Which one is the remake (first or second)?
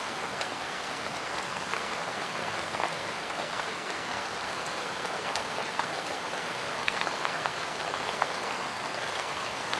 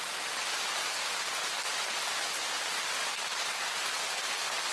first